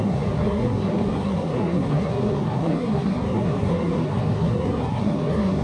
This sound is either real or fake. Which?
fake